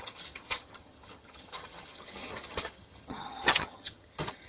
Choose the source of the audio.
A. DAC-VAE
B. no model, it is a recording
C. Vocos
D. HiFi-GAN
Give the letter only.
D